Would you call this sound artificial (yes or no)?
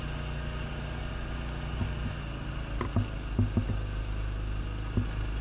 no